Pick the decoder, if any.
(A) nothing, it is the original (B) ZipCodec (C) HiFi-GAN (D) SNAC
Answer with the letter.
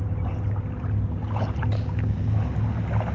A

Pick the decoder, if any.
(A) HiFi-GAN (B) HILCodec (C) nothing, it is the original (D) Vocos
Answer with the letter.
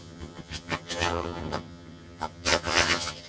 A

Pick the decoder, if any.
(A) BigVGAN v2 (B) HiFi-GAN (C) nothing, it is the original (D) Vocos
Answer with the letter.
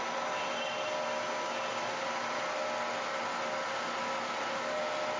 C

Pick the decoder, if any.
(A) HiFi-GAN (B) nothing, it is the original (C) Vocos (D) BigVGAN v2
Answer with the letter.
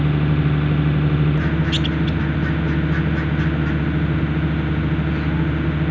B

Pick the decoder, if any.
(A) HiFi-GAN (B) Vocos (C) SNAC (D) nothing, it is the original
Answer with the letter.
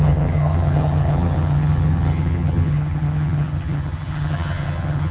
A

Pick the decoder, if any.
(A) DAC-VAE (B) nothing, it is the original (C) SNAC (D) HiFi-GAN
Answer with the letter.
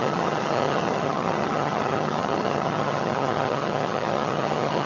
D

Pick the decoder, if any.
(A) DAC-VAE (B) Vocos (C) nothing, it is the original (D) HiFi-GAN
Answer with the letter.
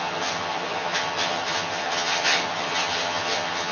D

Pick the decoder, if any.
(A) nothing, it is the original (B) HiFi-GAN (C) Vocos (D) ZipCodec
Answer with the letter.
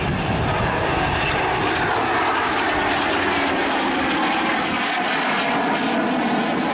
A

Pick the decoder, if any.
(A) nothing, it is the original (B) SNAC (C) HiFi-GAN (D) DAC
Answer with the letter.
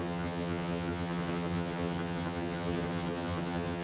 C